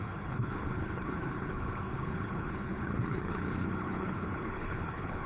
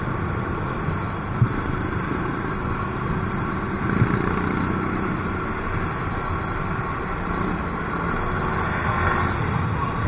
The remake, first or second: first